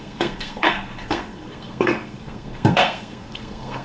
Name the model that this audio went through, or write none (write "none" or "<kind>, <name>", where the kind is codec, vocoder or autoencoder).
codec, SNAC